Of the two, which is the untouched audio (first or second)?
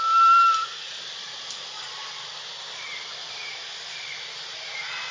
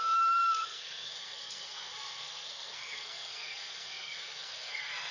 first